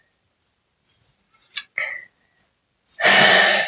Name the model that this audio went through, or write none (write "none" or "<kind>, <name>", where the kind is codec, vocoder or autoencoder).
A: none